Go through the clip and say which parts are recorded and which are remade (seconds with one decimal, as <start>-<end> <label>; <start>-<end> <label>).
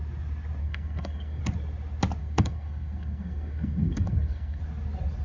0.0-0.6 recorded; 0.6-1.4 remade; 1.4-2.2 recorded; 2.2-4.6 remade; 4.6-5.2 recorded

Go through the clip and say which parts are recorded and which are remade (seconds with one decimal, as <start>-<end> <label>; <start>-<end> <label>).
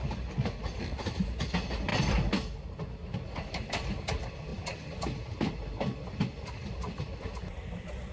0.0-8.1 recorded